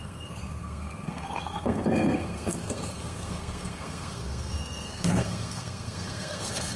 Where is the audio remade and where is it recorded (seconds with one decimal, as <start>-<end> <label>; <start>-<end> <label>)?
0.0-6.8 remade